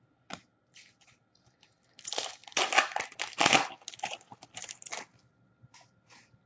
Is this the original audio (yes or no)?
yes